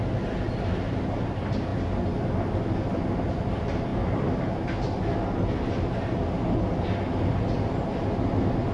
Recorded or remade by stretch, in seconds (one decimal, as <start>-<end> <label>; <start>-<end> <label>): 0.0-8.7 recorded